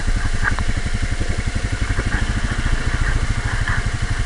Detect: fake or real fake